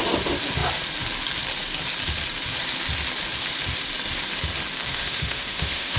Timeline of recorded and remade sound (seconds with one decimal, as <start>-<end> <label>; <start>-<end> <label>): 0.0-4.8 recorded; 4.8-6.0 remade